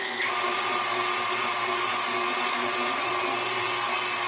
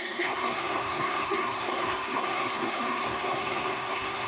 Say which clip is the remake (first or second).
second